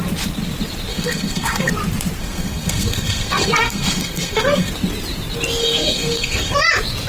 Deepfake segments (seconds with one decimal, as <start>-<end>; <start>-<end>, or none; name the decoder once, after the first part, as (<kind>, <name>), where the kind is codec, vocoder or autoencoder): 0.9-1.7 (codec, SNAC); 2.2-4.7; 5.6-6.6